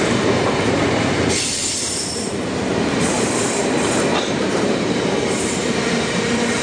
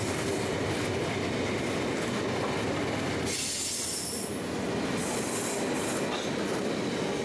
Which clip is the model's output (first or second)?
first